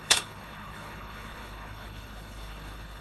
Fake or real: fake